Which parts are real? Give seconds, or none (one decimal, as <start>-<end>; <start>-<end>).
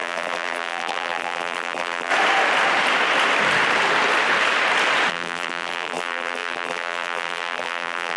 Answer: 2.1-5.1